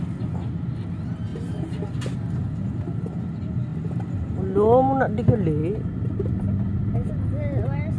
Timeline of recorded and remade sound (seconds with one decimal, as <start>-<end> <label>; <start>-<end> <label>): 0.0-1.3 recorded; 1.3-2.1 remade; 2.1-3.7 recorded; 3.7-4.2 remade; 4.2-8.0 recorded